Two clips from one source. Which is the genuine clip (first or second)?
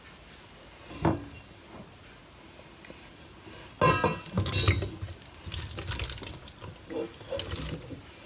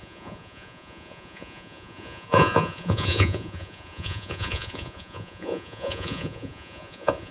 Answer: first